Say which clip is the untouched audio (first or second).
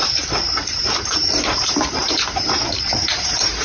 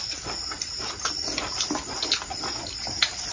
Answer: second